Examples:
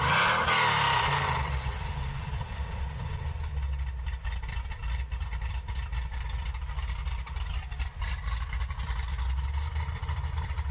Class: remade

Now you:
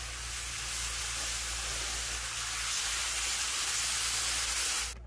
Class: recorded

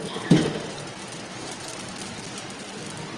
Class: recorded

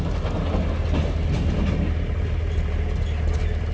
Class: recorded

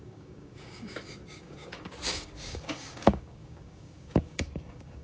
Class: remade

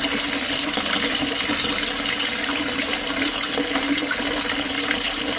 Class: recorded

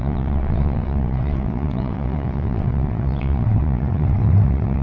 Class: remade